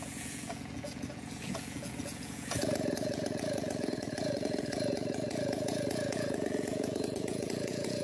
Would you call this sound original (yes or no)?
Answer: no